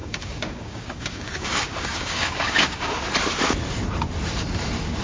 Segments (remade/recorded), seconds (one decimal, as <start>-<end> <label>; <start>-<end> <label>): 0.0-3.0 remade; 3.0-5.0 recorded